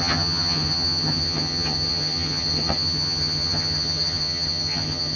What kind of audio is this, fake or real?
fake